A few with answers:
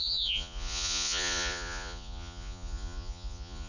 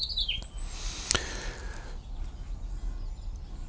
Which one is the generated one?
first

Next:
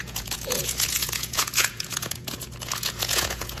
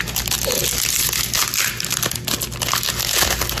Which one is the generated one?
first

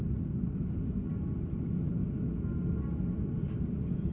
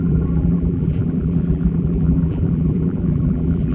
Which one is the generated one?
second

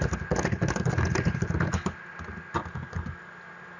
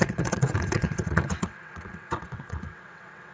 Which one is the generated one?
second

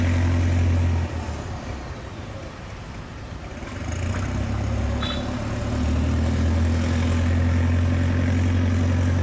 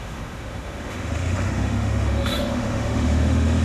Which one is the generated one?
second